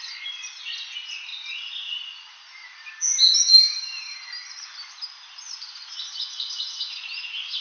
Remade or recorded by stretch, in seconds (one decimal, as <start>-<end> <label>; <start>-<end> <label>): 0.0-7.6 recorded